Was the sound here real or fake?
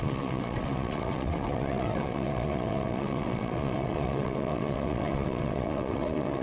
fake